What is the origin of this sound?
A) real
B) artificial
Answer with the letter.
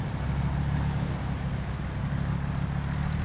A